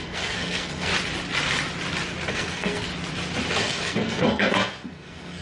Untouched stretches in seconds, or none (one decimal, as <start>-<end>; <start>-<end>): 0.9-2.3; 2.9-3.5